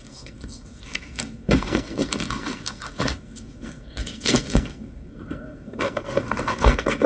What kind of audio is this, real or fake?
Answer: fake